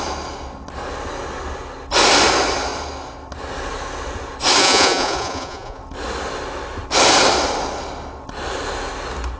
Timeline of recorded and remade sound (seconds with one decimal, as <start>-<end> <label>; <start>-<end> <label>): 0.0-4.6 recorded; 4.6-5.8 remade; 5.8-9.4 recorded